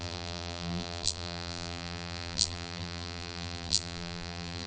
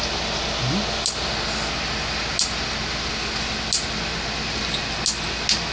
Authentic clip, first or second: second